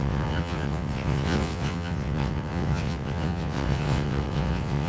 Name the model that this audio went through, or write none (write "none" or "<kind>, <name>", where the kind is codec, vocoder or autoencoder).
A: vocoder, WaveNeXt